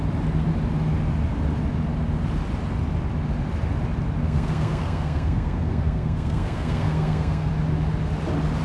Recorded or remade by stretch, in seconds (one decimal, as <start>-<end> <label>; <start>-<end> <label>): 0.0-4.2 recorded; 4.2-7.5 remade; 7.5-8.6 recorded